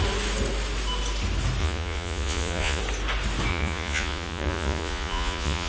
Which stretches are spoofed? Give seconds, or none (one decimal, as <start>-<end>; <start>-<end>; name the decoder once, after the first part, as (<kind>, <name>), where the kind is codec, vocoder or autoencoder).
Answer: 1.6-2.8 (vocoder, Vocos); 3.5-5.7